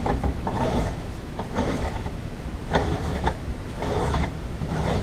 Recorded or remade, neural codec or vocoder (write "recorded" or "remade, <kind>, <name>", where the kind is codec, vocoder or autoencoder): remade, autoencoder, DAC-VAE